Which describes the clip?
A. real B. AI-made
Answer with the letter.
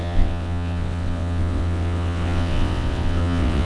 B